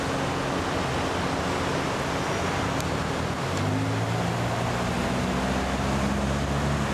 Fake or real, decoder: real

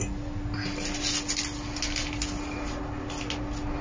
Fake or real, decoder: real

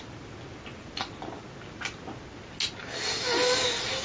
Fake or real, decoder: real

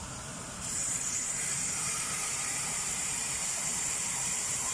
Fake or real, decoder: fake, vocoder, BigVGAN v2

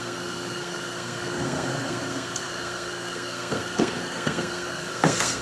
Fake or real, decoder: fake, codec, SNAC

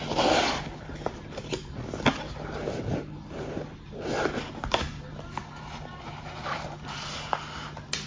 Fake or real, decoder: real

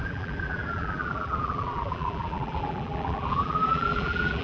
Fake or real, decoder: fake, vocoder, BigVGAN v2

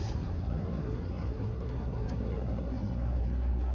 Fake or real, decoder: fake, codec, SNAC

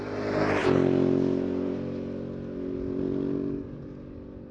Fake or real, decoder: real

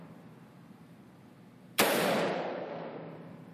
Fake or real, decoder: fake, vocoder, BigVGAN v2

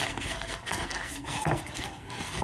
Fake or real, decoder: fake, codec, SNAC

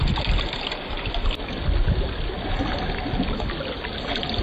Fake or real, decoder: real